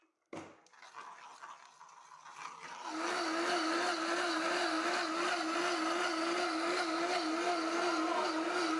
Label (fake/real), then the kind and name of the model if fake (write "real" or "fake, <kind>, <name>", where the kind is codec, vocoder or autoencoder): real